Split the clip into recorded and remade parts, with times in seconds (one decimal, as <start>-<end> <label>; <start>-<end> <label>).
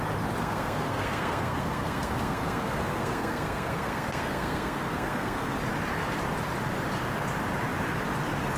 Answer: 0.0-0.4 recorded; 0.4-5.5 remade; 5.5-8.6 recorded